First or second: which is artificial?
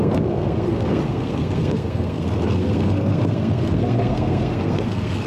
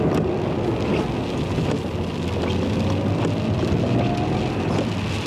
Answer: first